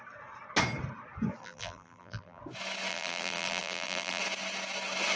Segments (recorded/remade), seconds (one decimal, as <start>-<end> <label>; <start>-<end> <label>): 0.0-1.4 recorded; 1.4-2.4 remade; 2.4-2.9 recorded; 2.9-4.2 remade; 4.2-5.2 recorded